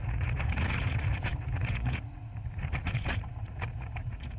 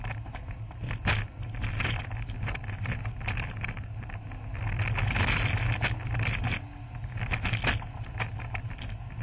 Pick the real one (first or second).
second